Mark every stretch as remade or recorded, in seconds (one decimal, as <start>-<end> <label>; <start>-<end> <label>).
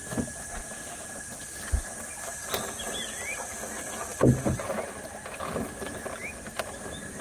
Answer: 0.0-1.2 remade; 1.2-7.2 recorded